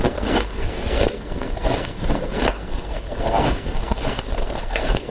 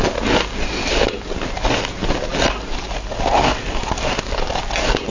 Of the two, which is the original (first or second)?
second